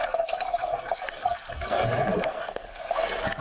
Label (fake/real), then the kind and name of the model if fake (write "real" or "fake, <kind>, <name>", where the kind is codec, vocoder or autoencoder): fake, codec, SNAC